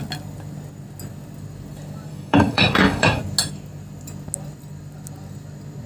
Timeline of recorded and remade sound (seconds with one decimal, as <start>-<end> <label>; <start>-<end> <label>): 0.0-2.1 recorded; 2.1-3.2 remade; 3.2-5.9 recorded